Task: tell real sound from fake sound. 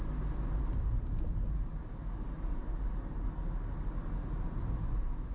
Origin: real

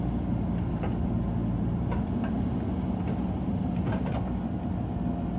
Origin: real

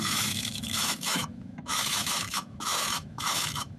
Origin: fake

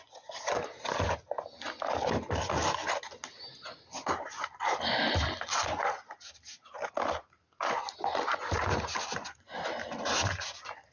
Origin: real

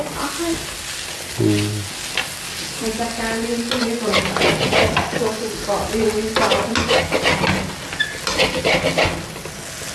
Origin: real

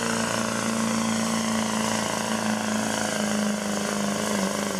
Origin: real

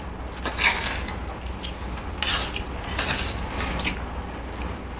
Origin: real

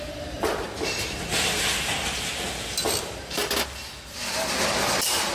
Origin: real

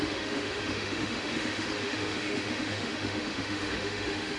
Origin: fake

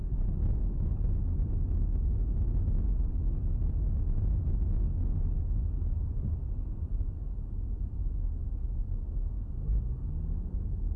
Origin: real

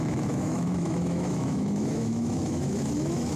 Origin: fake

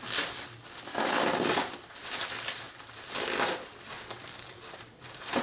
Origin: real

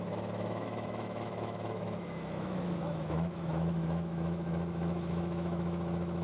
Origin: fake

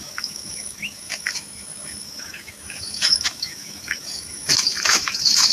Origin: fake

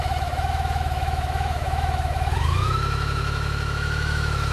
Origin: fake